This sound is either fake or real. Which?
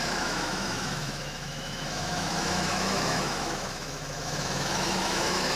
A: fake